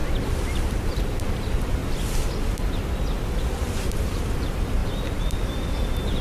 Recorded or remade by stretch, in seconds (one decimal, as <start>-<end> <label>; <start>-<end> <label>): 0.0-0.7 recorded; 0.7-1.8 remade; 1.8-3.6 recorded; 3.6-6.2 remade